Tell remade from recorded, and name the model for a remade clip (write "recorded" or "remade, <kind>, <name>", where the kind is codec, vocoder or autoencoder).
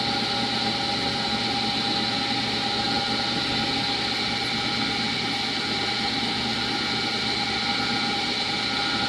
recorded